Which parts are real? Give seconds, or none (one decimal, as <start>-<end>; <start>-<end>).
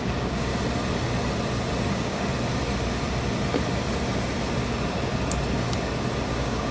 0.5-1.9; 2.3-6.3